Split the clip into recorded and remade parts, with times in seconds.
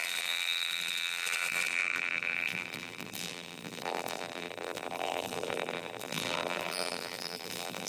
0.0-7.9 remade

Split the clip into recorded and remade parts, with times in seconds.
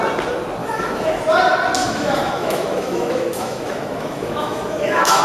0.0-0.6 recorded; 0.6-1.2 remade; 1.2-1.8 recorded; 1.8-5.2 remade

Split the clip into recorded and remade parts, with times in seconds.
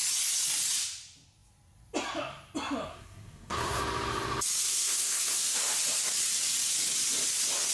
0.0-2.9 recorded; 2.9-3.8 remade; 3.8-4.6 recorded; 4.6-5.4 remade; 5.4-7.7 recorded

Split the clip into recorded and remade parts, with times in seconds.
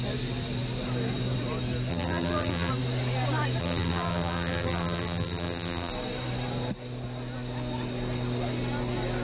0.0-1.9 recorded; 1.9-2.7 remade; 2.7-3.6 recorded; 3.6-5.9 remade; 5.9-9.2 recorded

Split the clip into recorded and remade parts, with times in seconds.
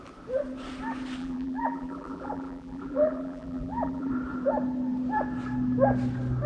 0.0-1.2 recorded; 1.2-4.1 remade; 4.1-6.5 recorded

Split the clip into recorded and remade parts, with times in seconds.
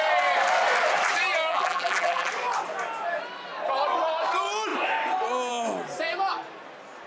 0.0-1.5 recorded; 1.5-2.3 remade; 2.3-7.1 recorded